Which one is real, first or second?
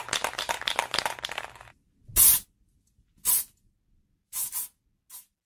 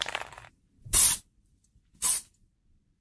first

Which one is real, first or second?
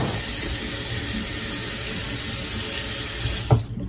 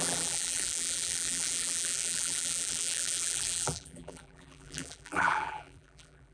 first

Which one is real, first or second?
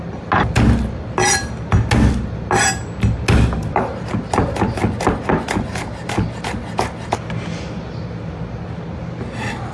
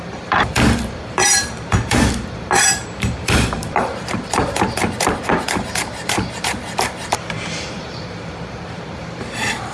first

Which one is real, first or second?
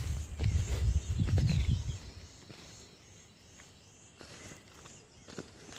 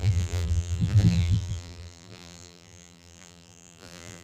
first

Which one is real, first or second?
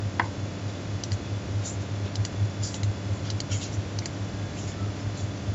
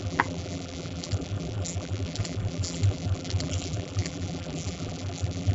first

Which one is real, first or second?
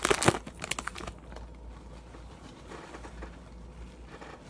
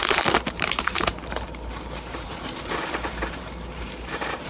first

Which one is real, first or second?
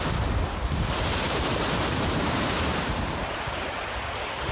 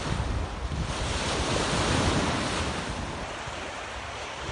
second